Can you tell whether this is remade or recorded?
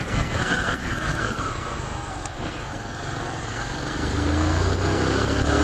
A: remade